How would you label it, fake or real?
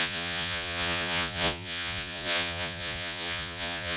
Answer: fake